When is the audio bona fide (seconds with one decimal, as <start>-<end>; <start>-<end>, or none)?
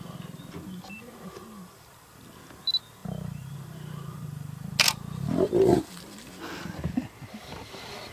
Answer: 0.0-8.1